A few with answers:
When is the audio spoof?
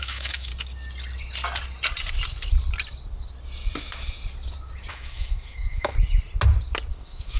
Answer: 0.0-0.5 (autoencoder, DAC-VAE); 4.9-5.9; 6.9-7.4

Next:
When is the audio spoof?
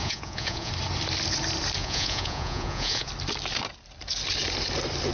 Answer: 0.0-0.7 (vocoder, Vocos); 1.8-3.1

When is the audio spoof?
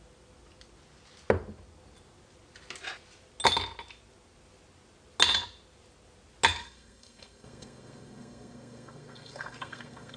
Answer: 6.6-10.2 (codec, SNAC)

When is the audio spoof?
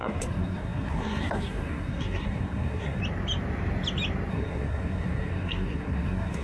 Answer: 0.0-3.0 (codec, SNAC); 4.3-6.4